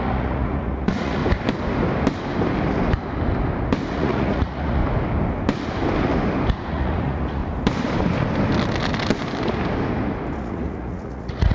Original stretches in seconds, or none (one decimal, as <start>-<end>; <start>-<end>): 1.2-3.9; 4.8-6.7; 7.4-10.4